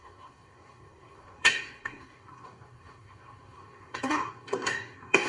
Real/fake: fake